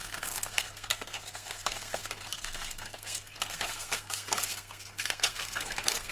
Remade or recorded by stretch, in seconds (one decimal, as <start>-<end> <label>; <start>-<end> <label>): 0.0-6.1 remade